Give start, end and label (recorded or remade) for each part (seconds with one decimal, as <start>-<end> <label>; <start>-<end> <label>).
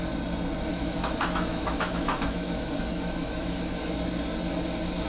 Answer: 0.0-0.7 recorded; 0.7-3.8 remade; 3.8-5.1 recorded